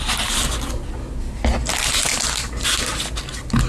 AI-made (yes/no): no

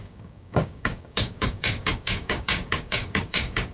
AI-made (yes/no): yes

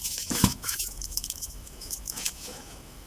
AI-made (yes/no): yes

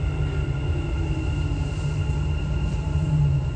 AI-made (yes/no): no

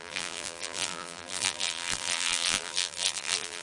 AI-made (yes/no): yes